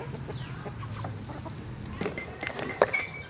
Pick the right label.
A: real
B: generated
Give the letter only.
A